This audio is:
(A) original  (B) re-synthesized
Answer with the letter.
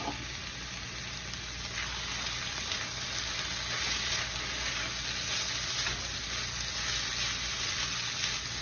A